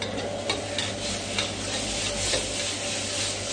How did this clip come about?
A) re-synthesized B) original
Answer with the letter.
B